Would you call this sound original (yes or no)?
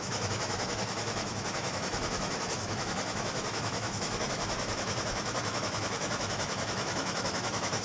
no